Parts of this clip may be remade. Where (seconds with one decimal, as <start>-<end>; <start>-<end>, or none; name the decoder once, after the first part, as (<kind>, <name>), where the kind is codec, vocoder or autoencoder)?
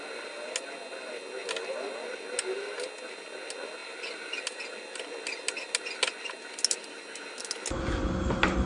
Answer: none